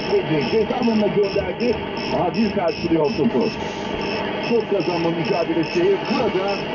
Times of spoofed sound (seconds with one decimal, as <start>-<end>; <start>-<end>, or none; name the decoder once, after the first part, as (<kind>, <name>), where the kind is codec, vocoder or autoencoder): 2.8-3.7 (vocoder, BigVGAN v2)